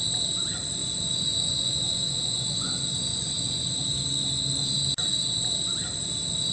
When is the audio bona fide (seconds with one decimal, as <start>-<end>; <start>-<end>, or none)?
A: 0.0-0.8; 2.7-3.1; 3.7-6.5